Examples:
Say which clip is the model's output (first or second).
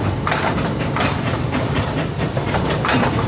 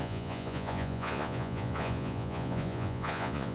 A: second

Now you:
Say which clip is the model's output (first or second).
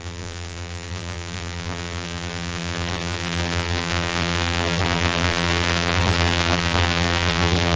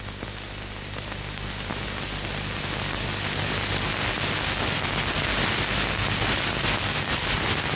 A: first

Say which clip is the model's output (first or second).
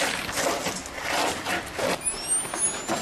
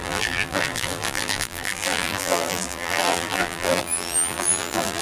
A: second